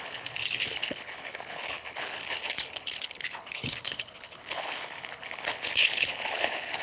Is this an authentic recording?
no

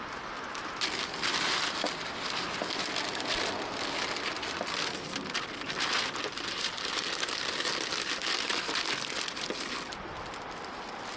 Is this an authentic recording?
yes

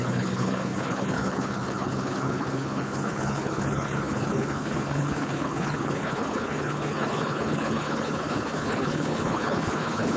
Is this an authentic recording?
no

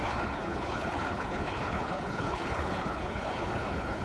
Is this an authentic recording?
no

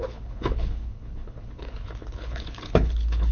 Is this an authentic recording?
no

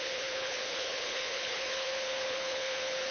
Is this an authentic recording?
no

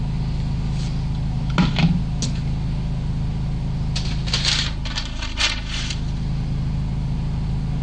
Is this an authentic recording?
yes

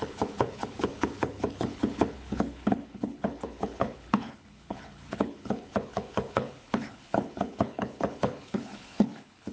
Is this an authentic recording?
no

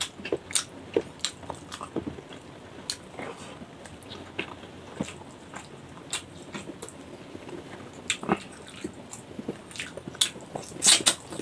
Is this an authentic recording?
yes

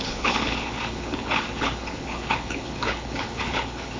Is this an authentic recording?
no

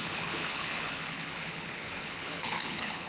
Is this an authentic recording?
no